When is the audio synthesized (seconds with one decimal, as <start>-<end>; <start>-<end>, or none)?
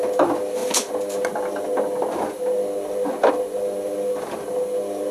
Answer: none